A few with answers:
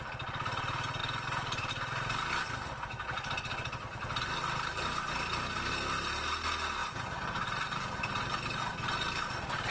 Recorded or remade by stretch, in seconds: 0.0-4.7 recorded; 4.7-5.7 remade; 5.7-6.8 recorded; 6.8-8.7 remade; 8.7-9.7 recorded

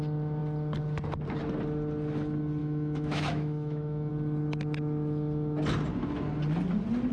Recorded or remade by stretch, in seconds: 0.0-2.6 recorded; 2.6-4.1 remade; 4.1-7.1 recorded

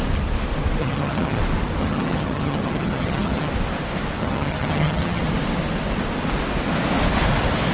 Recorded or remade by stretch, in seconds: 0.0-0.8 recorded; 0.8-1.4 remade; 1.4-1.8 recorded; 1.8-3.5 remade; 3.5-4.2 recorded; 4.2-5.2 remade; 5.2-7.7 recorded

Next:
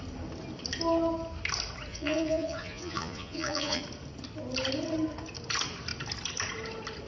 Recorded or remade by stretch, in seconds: 0.0-1.9 recorded; 1.9-3.8 remade; 3.8-7.1 recorded